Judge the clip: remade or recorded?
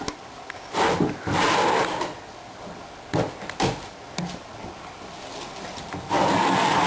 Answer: recorded